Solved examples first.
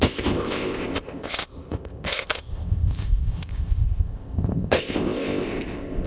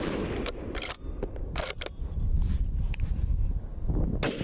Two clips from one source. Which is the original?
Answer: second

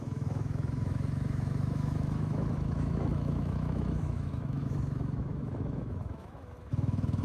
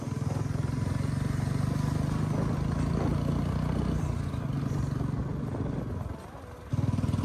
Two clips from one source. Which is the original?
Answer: second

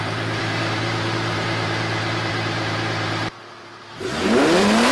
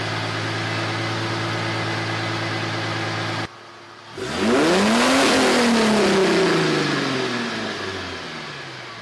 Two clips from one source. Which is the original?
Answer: second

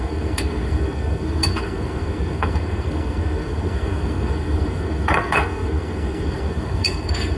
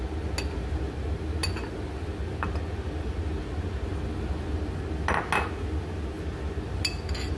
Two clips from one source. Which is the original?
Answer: second